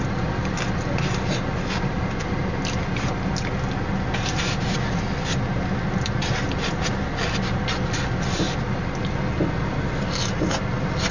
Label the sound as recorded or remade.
recorded